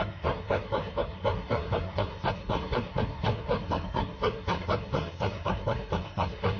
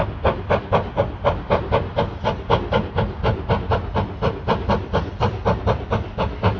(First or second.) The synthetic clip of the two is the first